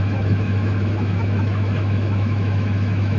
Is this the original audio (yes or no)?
no